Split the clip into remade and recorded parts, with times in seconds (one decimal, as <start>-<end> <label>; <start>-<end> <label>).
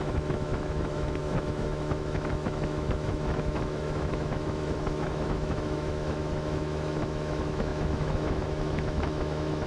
0.0-9.7 remade